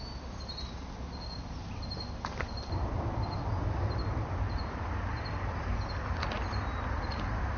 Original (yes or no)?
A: yes